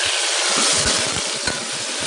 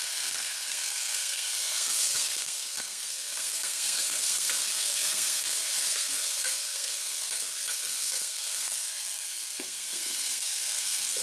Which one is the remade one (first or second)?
second